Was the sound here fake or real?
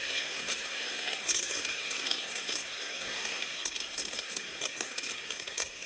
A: fake